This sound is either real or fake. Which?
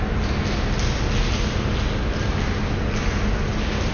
real